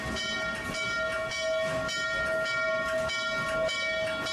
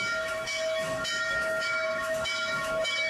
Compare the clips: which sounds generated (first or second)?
second